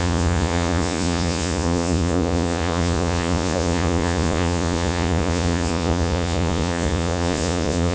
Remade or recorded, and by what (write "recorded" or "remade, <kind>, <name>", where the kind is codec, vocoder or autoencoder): remade, vocoder, Vocos